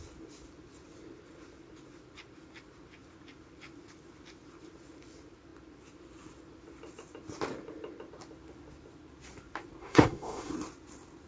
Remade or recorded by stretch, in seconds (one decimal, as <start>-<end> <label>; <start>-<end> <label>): 0.0-9.8 recorded; 9.8-10.5 remade; 10.5-11.3 recorded